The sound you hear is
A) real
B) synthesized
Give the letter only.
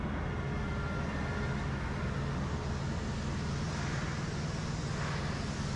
A